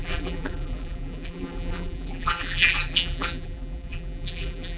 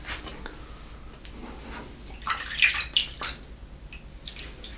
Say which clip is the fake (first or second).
first